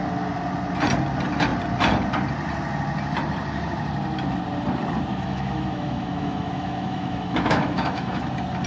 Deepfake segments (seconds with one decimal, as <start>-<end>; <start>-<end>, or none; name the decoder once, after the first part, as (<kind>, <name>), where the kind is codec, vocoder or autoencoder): 5.1-8.2 (autoencoder, DAC-VAE)